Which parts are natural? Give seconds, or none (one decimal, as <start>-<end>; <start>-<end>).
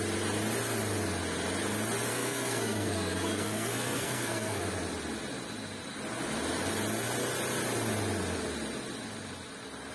0.0-2.1; 4.6-9.9